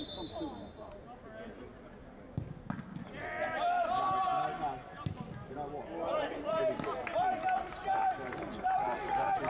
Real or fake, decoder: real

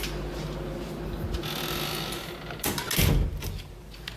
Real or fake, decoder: real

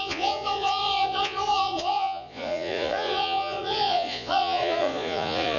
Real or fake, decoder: fake, vocoder, Vocos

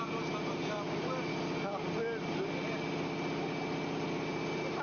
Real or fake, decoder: real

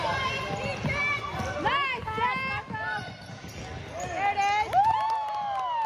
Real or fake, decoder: real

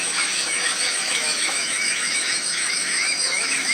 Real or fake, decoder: fake, autoencoder, DAC-VAE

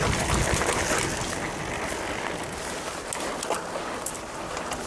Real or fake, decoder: real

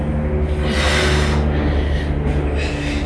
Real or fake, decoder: real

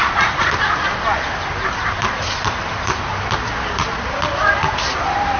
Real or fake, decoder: real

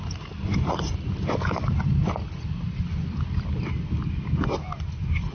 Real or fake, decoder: real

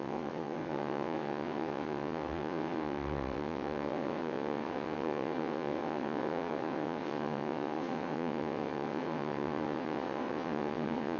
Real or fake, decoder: fake, vocoder, WaveNeXt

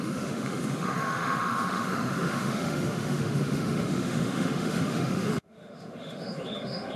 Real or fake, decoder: fake, autoencoder, DAC-VAE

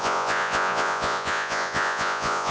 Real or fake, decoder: fake, vocoder, Vocos